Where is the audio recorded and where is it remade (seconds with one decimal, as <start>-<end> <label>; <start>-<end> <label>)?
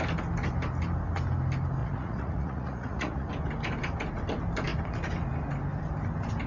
0.0-1.8 recorded; 1.8-3.3 remade; 3.3-6.5 recorded